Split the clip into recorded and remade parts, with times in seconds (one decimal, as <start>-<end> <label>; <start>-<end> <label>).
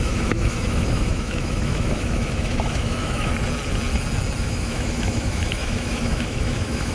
0.0-3.3 remade; 3.3-4.4 recorded; 4.4-6.9 remade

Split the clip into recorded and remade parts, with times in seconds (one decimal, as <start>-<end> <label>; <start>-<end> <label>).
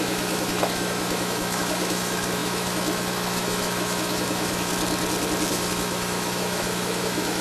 0.0-4.7 remade; 4.7-5.5 recorded; 5.5-7.4 remade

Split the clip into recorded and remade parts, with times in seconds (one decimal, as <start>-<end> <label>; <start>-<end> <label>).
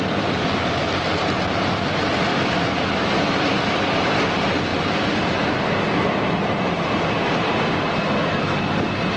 0.0-2.3 recorded; 2.3-3.0 remade; 3.0-9.2 recorded